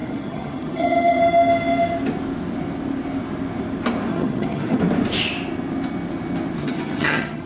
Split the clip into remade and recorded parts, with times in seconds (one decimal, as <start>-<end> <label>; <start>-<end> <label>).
0.0-1.2 remade; 1.2-4.1 recorded; 4.1-4.8 remade; 4.8-6.6 recorded; 6.6-7.5 remade